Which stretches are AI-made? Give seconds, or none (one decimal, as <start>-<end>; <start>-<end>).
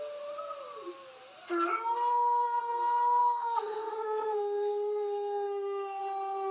2.1-2.6; 3.2-6.0